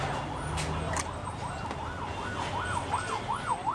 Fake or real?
real